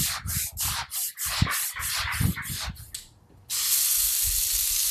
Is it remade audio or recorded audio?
recorded